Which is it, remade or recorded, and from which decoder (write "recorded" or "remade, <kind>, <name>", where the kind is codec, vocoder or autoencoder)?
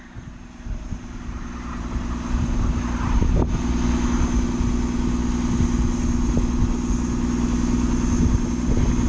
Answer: recorded